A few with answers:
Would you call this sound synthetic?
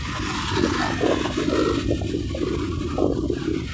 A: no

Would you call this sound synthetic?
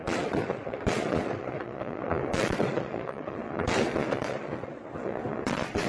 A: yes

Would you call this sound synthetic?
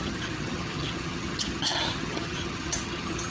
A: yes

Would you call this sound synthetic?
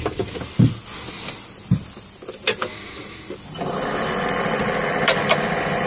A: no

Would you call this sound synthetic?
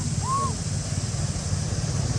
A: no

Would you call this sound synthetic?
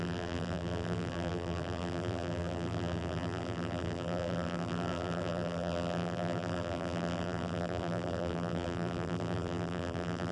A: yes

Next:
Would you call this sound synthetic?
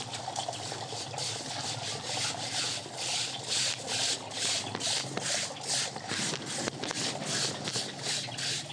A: no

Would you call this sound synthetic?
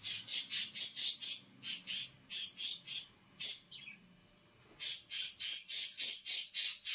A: no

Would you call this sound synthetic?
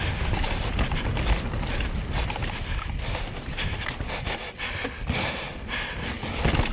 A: no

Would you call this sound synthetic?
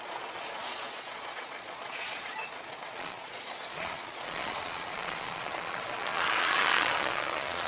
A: yes